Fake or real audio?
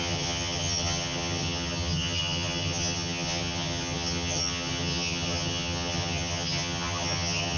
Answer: fake